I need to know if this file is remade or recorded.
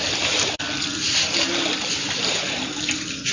recorded